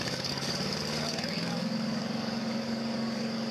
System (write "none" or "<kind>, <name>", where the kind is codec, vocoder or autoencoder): codec, DAC